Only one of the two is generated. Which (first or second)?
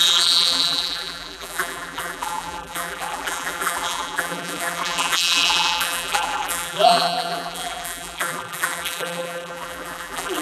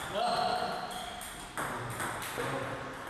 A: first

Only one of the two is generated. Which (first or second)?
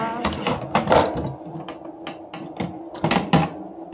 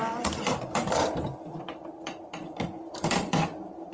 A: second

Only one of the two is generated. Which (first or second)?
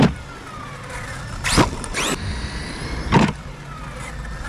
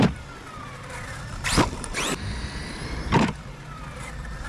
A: second